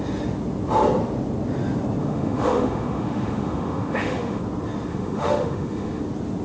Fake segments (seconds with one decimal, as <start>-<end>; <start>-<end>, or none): 2.0-4.4; 4.9-6.0

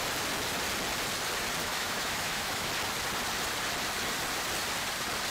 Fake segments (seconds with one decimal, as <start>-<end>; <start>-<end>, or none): 1.6-2.7

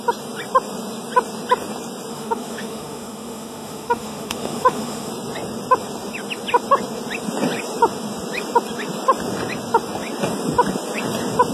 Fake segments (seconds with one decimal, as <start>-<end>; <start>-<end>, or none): 2.1-5.1